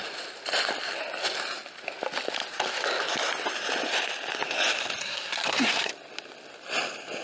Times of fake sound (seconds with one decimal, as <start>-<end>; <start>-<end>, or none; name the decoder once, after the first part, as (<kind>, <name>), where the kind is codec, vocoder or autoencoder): 5.0-5.9 (codec, SNAC)